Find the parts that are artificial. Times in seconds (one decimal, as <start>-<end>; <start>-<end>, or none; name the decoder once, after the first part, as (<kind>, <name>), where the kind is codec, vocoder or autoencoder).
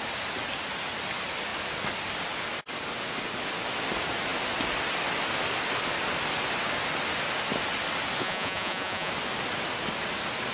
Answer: 8.2-9.1 (vocoder, Vocos)